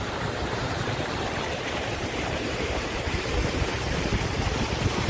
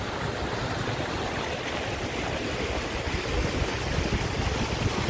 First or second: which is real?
second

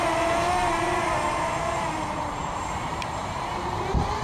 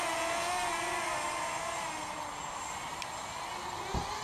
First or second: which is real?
second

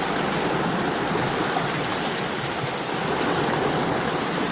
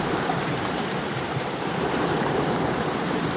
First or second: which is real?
first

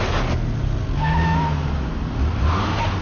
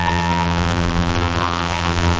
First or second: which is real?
first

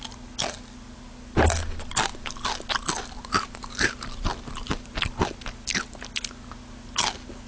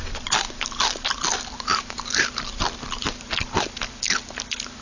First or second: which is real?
first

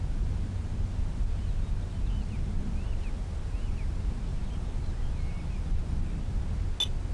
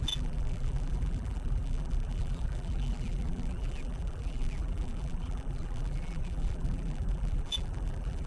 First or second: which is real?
first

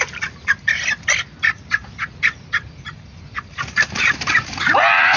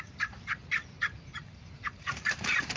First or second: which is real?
first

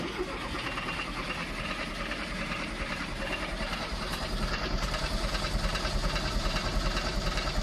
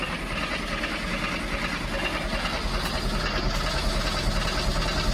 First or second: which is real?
second